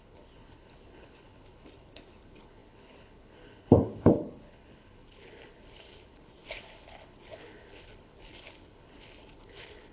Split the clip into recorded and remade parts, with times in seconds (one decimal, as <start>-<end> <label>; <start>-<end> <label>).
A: 0.0-9.9 remade